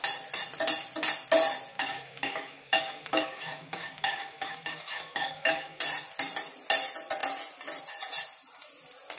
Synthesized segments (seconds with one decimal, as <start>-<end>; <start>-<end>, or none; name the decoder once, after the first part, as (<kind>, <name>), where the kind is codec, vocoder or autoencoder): 1.7-5.8 (codec, DAC)